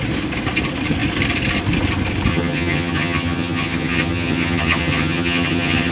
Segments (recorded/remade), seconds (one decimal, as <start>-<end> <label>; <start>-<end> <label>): 0.0-2.3 recorded; 2.3-5.9 remade